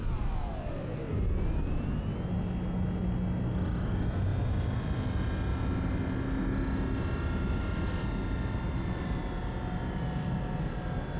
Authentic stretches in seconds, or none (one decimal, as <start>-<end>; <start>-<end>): 0.0-11.2